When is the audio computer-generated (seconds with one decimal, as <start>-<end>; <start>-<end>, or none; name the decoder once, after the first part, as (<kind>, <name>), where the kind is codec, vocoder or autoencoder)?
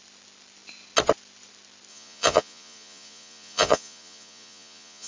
1.9-5.1 (vocoder, Vocos)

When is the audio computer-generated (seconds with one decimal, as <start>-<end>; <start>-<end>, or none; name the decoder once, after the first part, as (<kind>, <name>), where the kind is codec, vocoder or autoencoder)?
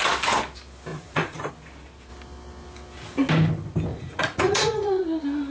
0.9-1.5 (vocoder, Vocos); 3.9-5.0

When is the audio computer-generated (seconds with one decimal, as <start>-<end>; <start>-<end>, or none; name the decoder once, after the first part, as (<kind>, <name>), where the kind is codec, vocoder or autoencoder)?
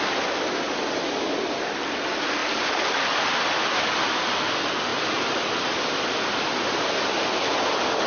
none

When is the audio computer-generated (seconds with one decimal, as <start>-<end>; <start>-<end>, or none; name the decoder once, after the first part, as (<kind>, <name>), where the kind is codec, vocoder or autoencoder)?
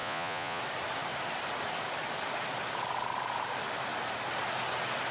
0.0-0.6 (vocoder, Vocos)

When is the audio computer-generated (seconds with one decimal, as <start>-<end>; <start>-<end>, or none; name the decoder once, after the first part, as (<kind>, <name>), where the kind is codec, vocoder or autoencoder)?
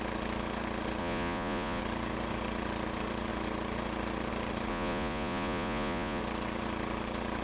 1.0-1.8 (vocoder, Vocos); 4.7-6.2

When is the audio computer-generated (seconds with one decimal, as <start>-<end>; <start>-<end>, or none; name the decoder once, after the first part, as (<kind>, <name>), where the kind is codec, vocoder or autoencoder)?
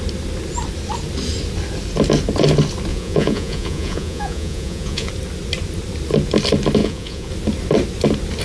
2.9-5.1 (vocoder, Vocos); 6.8-7.3